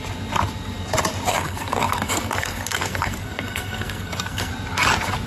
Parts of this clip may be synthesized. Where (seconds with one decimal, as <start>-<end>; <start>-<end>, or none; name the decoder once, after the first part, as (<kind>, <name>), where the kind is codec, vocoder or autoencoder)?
1.3-4.5 (codec, SNAC)